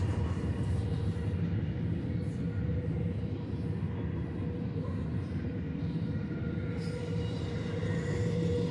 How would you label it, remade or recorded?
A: recorded